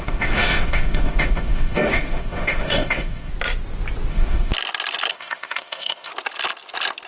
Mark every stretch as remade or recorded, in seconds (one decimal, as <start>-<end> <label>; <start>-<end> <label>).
0.0-3.3 remade; 3.3-4.1 recorded; 4.1-4.5 remade; 4.5-5.1 recorded; 5.1-6.1 remade; 6.1-7.1 recorded